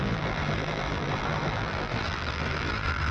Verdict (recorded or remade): remade